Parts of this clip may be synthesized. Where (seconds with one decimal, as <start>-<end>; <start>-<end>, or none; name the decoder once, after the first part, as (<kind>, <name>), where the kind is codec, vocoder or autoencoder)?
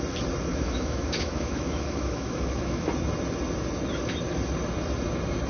0.5-2.9 (autoencoder, DAC-VAE)